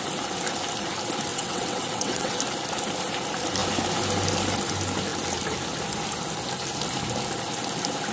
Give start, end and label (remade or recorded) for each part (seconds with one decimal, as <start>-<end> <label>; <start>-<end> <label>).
0.0-1.3 recorded; 1.3-2.4 remade; 2.4-8.1 recorded